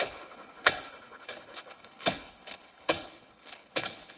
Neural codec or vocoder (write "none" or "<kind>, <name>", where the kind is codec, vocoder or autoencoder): codec, HILCodec